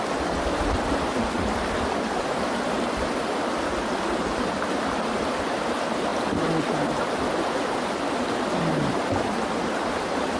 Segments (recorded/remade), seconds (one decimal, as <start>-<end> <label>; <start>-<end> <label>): 0.0-6.1 remade; 6.1-8.6 recorded; 8.6-10.4 remade